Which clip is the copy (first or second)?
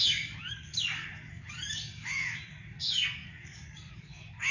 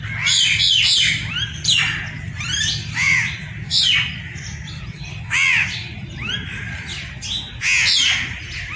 first